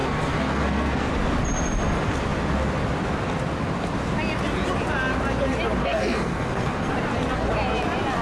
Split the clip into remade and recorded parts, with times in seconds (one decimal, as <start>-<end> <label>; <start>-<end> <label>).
0.0-1.1 remade; 1.1-5.8 recorded; 5.8-6.9 remade; 6.9-8.2 recorded